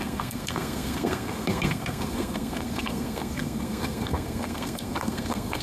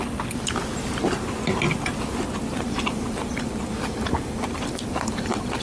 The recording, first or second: second